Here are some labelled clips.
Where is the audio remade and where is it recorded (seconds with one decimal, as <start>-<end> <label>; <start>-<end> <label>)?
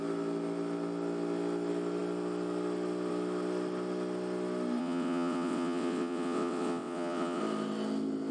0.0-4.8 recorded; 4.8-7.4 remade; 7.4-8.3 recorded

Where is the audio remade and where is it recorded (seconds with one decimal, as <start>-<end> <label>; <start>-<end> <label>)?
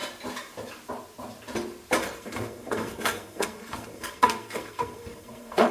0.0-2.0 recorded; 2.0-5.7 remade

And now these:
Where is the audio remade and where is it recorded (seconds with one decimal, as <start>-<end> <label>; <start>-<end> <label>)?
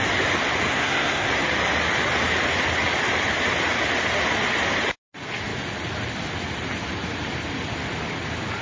0.0-0.7 recorded; 0.7-1.3 remade; 1.3-8.6 recorded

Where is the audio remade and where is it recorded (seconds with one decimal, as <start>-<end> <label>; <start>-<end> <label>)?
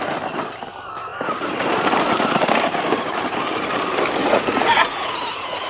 0.0-4.2 recorded; 4.2-5.7 remade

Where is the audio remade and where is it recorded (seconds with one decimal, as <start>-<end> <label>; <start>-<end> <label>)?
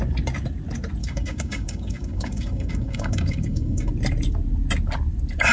0.0-1.0 recorded; 1.0-3.9 remade; 3.9-5.5 recorded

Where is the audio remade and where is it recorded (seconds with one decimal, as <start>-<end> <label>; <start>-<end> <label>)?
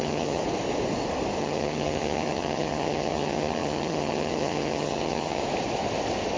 0.0-0.4 remade; 0.4-1.4 recorded; 1.4-5.4 remade; 5.4-6.4 recorded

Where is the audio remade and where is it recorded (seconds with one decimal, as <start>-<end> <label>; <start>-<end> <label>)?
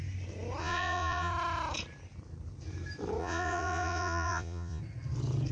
0.0-0.6 recorded; 0.6-1.3 remade; 1.3-3.2 recorded; 3.2-4.8 remade; 4.8-5.5 recorded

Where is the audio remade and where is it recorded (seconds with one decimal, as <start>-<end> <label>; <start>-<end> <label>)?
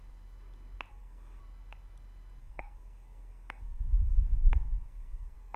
0.0-0.9 recorded; 0.9-1.4 remade; 1.4-2.4 recorded; 2.4-5.6 remade